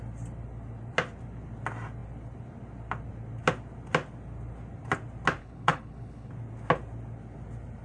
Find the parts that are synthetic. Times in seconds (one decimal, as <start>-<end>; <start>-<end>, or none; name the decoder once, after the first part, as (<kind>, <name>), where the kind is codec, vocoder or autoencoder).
5.4-6.3 (codec, HILCodec)